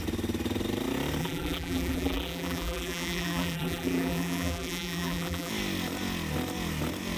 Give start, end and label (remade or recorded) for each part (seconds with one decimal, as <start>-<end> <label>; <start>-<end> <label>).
0.0-1.2 recorded; 1.2-5.5 remade; 5.5-7.2 recorded